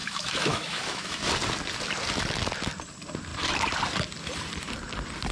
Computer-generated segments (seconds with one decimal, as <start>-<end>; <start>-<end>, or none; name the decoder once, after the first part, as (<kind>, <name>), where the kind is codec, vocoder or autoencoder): 0.0-1.3 (autoencoder, DAC-VAE)